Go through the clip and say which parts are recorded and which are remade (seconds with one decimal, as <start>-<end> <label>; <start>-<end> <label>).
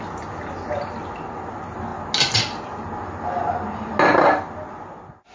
0.0-5.3 recorded